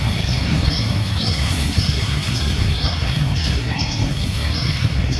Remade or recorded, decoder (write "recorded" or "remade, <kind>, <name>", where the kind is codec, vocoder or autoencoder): remade, codec, SNAC